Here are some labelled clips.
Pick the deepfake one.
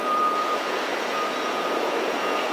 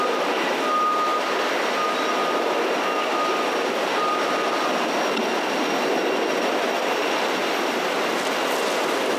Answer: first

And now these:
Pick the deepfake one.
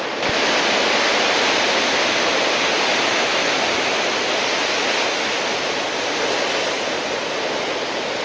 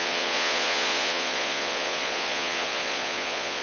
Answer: second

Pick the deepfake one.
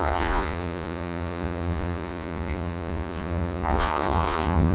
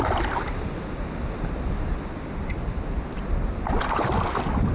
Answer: first